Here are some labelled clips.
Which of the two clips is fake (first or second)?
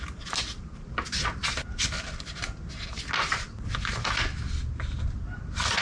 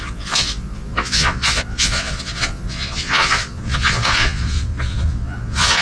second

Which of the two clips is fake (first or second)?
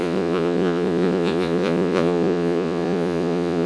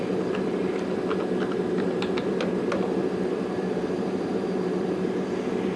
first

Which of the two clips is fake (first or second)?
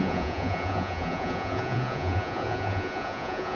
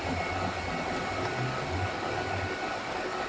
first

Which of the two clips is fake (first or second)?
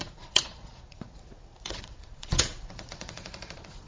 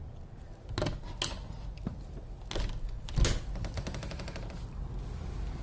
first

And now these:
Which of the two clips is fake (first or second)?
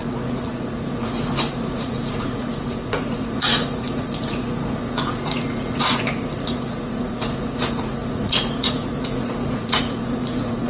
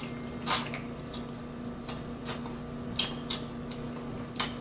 first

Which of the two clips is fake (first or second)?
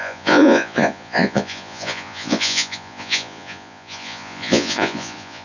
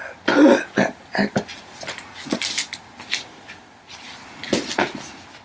first